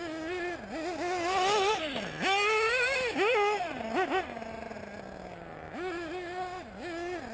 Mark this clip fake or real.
real